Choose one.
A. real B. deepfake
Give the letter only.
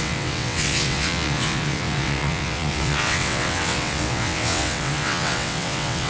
B